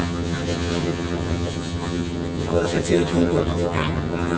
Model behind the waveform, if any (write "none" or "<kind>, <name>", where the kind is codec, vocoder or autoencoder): vocoder, HiFi-GAN